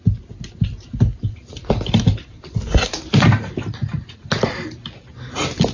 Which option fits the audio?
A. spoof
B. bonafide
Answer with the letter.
B